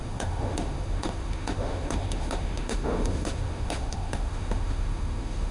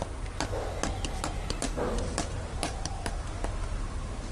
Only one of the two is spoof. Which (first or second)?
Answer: first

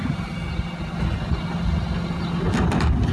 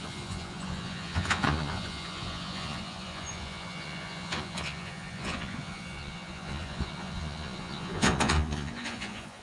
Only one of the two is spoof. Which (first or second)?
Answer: second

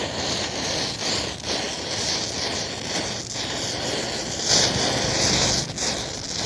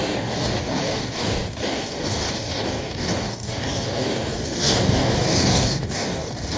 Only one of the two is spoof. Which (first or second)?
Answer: second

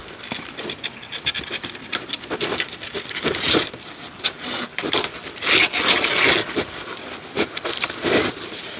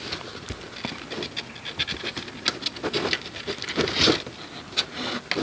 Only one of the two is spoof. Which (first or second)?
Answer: first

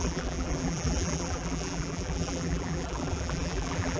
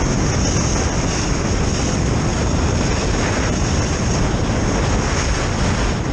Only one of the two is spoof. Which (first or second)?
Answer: first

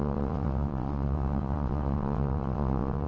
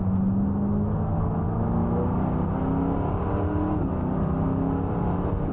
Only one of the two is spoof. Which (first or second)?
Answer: first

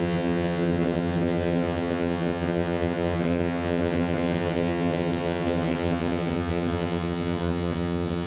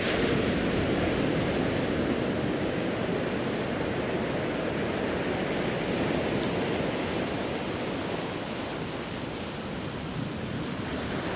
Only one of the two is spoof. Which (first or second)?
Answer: first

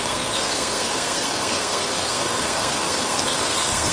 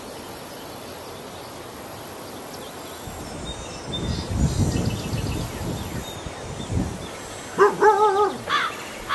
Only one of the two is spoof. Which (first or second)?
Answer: first